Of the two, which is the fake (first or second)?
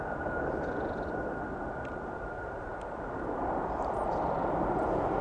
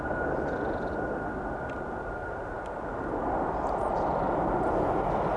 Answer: first